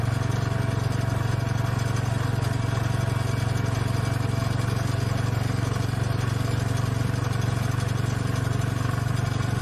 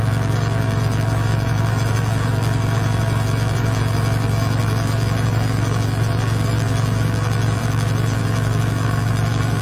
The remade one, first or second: second